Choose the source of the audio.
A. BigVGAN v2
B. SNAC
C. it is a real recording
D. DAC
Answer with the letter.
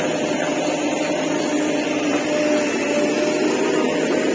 C